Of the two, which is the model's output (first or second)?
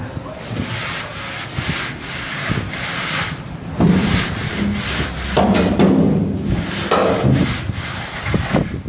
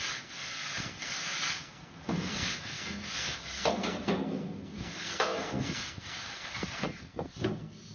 second